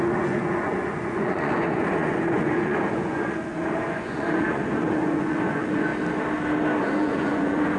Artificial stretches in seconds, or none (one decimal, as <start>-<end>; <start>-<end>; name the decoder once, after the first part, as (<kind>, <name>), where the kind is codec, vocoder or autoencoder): 0.0-5.9 (vocoder, Vocos); 6.8-7.8